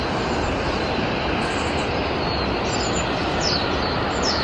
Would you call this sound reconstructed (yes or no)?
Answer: no